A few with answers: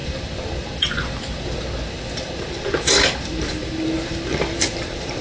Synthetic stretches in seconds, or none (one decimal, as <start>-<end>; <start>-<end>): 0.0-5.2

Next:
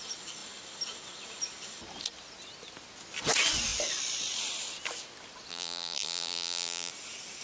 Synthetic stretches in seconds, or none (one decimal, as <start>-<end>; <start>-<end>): 5.5-6.9

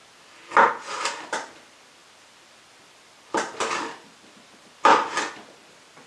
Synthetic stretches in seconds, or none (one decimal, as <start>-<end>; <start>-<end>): 0.0-6.1

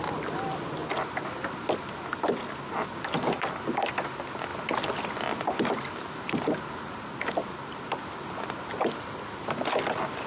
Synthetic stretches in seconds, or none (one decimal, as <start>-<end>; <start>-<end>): 0.8-1.6

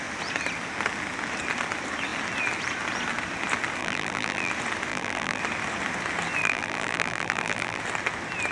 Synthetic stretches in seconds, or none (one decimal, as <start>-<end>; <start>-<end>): 3.8-4.5; 4.9-5.4; 6.4-7.8

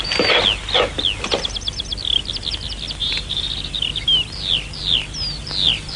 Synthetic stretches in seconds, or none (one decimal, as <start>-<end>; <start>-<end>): 3.0-3.7

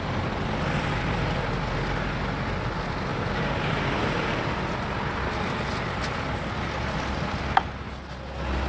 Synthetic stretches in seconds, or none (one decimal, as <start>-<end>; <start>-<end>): 3.1-4.6

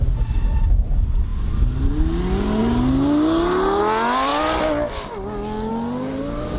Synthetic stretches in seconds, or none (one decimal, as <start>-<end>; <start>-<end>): none